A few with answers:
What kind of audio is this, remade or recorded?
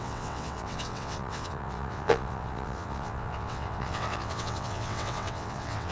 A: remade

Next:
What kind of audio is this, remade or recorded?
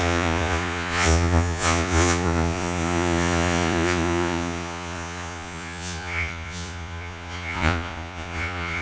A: remade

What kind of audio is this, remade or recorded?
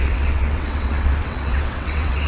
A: remade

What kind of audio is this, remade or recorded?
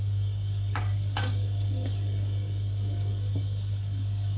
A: remade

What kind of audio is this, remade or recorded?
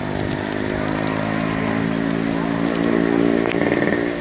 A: recorded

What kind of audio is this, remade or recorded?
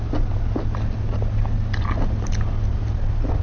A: recorded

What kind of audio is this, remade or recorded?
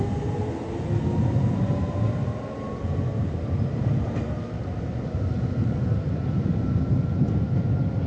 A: recorded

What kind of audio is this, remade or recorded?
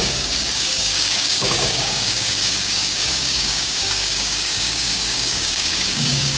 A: remade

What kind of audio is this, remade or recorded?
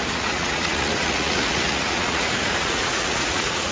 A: remade